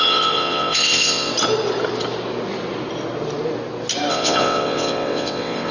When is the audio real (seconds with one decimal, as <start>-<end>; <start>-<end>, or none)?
1.3-4.1